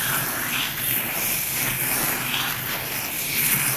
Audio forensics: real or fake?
real